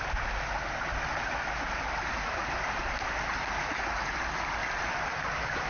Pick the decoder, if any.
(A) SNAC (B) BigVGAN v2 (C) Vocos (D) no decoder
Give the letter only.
D